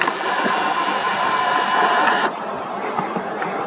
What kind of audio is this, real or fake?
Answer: real